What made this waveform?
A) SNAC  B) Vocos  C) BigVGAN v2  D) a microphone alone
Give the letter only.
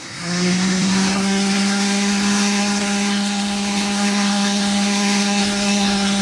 A